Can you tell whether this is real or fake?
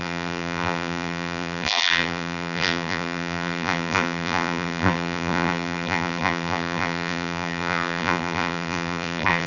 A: fake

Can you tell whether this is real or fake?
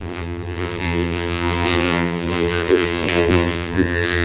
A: fake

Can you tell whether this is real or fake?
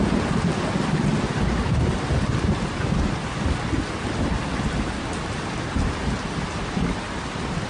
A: real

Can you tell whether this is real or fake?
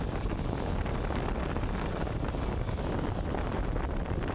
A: fake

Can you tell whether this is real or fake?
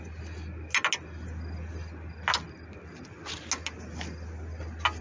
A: real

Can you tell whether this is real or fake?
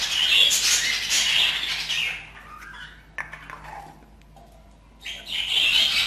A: real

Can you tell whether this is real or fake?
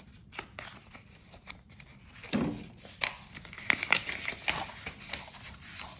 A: fake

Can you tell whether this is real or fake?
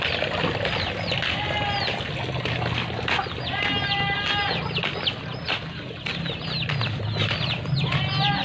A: real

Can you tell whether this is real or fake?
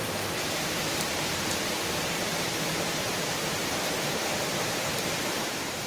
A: fake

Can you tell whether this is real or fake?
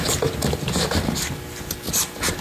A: real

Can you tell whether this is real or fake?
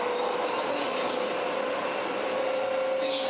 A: real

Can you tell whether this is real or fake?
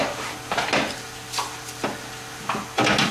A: real